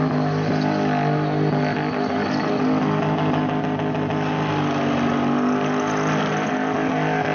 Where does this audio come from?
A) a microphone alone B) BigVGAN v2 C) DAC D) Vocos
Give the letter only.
A